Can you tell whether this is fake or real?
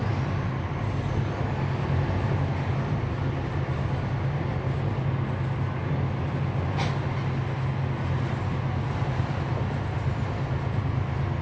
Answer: real